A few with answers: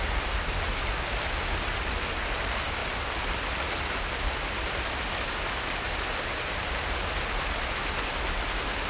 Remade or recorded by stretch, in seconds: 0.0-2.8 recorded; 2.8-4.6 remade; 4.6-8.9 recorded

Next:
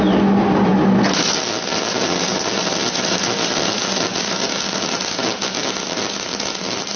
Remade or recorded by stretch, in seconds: 0.0-2.8 recorded; 2.8-7.0 remade